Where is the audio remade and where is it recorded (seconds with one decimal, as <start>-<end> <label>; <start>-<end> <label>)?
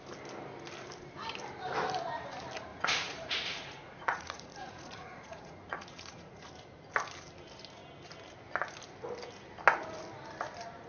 0.0-2.7 recorded; 2.7-6.5 remade; 6.5-10.9 recorded